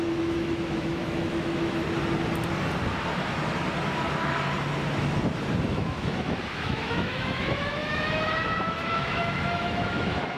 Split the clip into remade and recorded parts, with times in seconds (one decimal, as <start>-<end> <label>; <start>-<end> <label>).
0.0-1.8 remade; 1.8-5.7 recorded; 5.7-10.4 remade